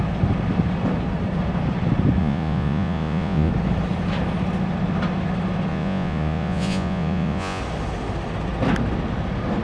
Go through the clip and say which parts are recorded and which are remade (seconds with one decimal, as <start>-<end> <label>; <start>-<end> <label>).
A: 0.0-2.2 recorded; 2.2-3.5 remade; 3.5-5.7 recorded; 5.7-7.6 remade; 7.6-9.6 recorded